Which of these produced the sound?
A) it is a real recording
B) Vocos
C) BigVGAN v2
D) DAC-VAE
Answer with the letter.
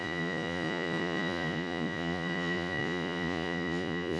B